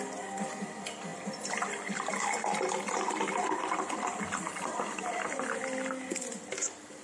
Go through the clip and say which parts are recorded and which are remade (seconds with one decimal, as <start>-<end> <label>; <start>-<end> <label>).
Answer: 0.0-7.0 recorded